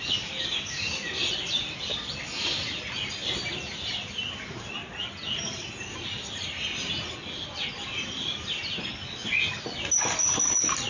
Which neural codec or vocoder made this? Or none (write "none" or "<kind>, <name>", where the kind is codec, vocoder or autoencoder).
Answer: none